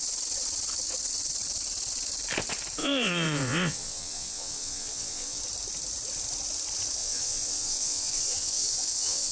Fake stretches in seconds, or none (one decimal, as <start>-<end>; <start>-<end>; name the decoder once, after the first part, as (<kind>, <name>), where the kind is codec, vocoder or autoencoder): 2.8-5.4 (vocoder, WaveNeXt); 7.0-9.3